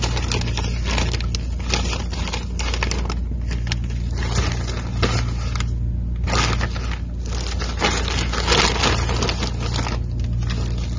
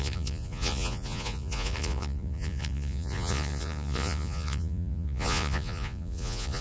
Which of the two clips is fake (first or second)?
second